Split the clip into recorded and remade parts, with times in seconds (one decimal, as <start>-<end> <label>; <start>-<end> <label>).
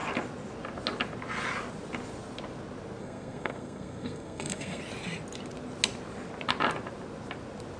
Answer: 0.0-3.0 recorded; 3.0-4.8 remade; 4.8-7.8 recorded